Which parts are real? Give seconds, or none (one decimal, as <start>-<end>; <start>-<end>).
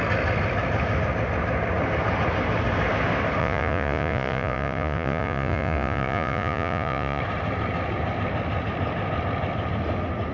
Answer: 0.0-3.4; 7.2-10.3